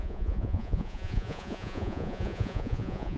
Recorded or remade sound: remade